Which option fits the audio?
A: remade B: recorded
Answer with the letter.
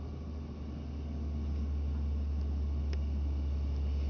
B